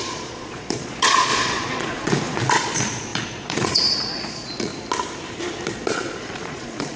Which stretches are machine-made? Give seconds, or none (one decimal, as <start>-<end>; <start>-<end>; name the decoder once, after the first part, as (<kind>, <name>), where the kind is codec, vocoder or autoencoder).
0.0-4.7 (vocoder, Vocos); 5.7-7.0

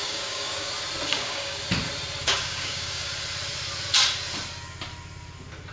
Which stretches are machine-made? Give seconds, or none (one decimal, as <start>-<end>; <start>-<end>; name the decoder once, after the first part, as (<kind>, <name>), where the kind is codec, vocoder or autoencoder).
0.0-0.7 (codec, DAC); 1.1-1.6; 2.2-3.1

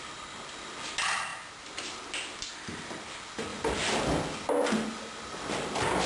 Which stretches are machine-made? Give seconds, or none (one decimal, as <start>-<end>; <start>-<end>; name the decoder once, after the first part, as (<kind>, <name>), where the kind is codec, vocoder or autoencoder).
none

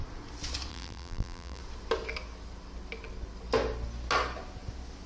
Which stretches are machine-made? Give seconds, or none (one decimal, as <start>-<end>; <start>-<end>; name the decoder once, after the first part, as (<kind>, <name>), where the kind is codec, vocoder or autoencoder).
0.7-1.6 (vocoder, BigVGAN v2)

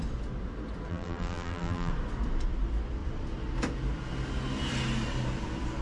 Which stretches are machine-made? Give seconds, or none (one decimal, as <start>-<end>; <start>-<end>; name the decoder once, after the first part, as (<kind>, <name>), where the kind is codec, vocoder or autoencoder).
0.9-1.9 (vocoder, BigVGAN v2)

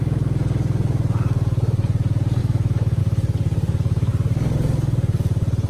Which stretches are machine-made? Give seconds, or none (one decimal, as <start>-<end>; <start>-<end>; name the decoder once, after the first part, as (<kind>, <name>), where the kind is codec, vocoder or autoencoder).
2.4-3.0 (autoencoder, DAC-VAE)

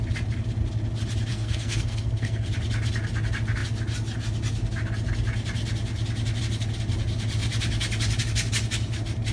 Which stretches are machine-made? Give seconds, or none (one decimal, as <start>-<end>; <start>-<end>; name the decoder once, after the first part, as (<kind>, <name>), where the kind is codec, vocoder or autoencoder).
1.3-2.5 (codec, SNAC)